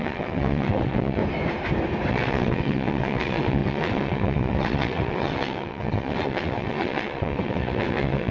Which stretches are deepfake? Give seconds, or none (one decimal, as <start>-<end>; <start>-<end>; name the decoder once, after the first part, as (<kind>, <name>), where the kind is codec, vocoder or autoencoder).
0.0-1.2 (vocoder, WaveNeXt); 2.1-8.3